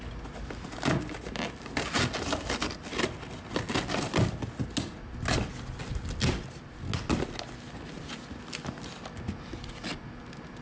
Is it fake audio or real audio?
real